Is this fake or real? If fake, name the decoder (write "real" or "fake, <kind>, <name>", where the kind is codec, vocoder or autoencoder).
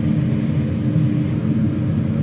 real